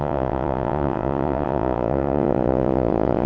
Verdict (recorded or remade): remade